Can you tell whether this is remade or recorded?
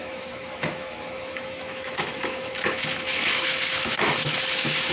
remade